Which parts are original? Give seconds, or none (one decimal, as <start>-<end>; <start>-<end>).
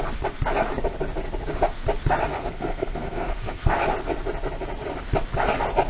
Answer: 0.0-2.3; 3.8-5.9